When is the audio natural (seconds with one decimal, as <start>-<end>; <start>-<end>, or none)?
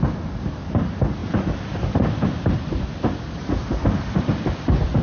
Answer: 0.0-5.0